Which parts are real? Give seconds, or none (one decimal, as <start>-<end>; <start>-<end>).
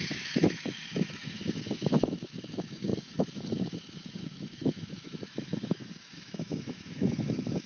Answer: none